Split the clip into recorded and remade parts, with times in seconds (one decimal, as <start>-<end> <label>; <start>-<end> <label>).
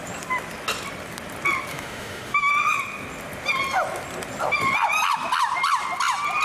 0.0-1.7 recorded; 1.7-2.5 remade; 2.5-6.4 recorded